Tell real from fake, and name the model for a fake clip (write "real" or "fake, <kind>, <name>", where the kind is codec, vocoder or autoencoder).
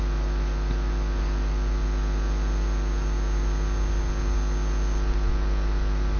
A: real